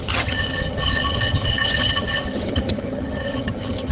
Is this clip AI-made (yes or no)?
yes